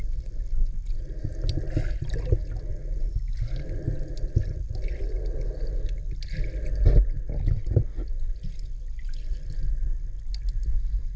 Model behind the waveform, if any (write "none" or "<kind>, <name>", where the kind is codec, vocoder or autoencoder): none